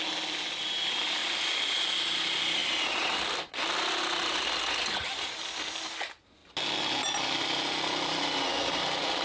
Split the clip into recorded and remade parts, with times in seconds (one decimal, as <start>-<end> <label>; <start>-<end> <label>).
0.0-9.2 recorded